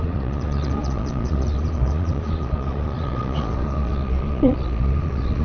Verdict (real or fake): fake